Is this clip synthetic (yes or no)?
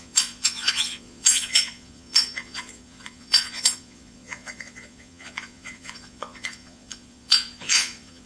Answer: yes